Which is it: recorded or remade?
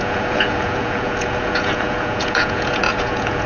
remade